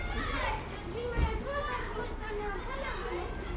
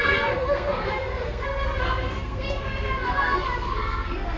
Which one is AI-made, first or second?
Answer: second